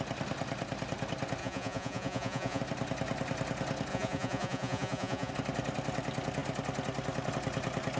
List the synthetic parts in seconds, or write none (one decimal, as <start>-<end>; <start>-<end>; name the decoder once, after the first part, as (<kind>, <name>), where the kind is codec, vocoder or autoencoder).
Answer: 1.4-2.6 (vocoder, Vocos); 3.9-5.3